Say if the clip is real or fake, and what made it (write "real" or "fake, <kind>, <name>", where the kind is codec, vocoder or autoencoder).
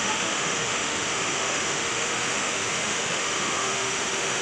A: fake, autoencoder, DAC-VAE